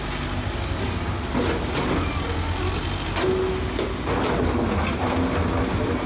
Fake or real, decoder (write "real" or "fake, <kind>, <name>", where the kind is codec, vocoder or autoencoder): real